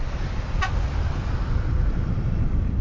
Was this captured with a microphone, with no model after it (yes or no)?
yes